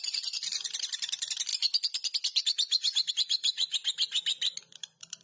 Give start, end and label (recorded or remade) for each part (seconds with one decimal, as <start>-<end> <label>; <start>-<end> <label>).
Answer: 0.0-1.5 remade; 1.5-3.1 recorded; 3.1-3.8 remade; 3.8-4.6 recorded; 4.6-5.2 remade